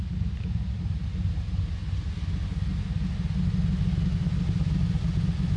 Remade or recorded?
recorded